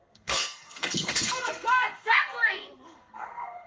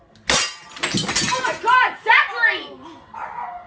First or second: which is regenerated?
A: first